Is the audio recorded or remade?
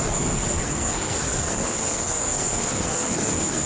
remade